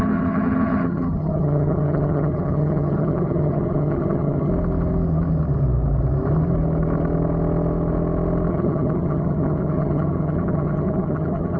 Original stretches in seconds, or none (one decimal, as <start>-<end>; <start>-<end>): 4.5-8.5